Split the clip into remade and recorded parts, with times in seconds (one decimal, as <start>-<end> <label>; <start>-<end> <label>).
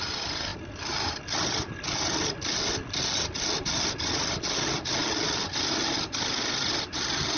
0.0-7.4 recorded